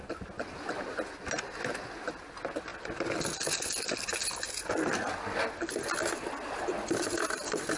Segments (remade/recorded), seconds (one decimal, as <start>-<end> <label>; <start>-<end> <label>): 0.0-7.8 recorded